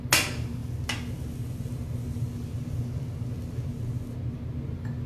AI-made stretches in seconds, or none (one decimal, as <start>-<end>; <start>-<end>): none